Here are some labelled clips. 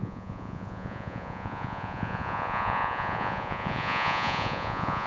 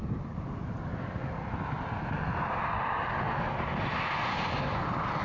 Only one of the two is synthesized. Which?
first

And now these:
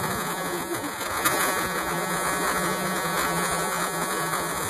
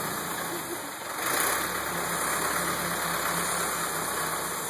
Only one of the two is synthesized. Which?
first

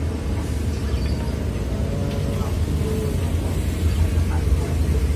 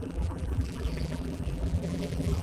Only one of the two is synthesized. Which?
second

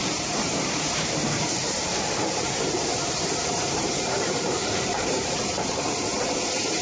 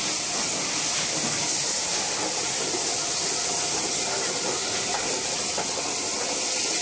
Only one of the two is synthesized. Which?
first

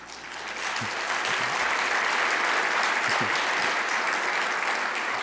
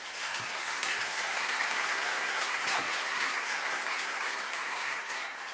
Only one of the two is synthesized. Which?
second